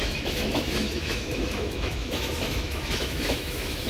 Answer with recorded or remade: remade